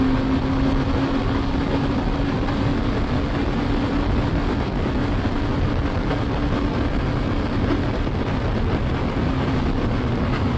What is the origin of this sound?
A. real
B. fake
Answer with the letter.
A